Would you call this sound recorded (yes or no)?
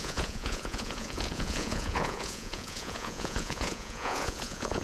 no